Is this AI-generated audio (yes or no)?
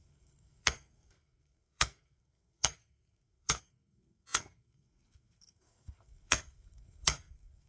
yes